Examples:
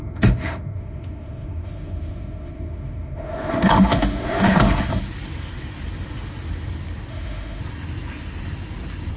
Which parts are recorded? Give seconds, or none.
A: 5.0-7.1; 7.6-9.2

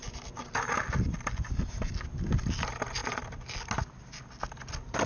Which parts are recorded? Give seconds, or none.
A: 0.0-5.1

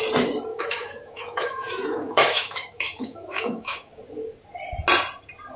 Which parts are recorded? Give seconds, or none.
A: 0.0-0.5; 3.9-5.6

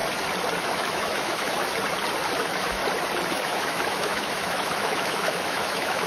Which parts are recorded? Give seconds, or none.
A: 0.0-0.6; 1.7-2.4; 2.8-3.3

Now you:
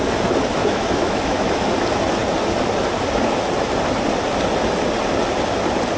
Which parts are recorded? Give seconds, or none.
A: 0.0-0.6; 1.7-6.0

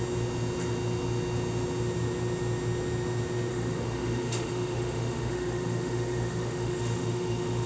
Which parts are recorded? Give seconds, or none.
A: 0.0-3.5

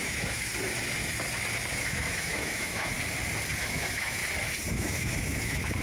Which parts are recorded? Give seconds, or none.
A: 0.5-1.7; 2.9-3.6; 4.2-4.7

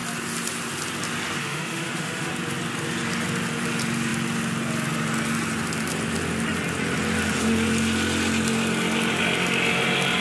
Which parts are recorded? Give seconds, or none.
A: 0.0-1.4; 2.3-10.2